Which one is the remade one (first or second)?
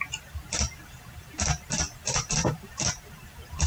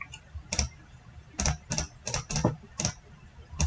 first